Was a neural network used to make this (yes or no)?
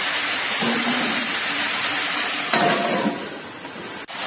no